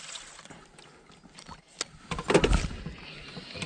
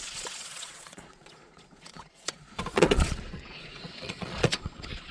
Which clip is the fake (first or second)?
second